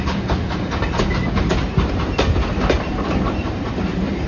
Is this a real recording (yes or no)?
yes